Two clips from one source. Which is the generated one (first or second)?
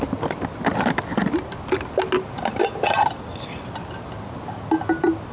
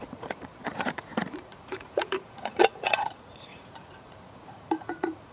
second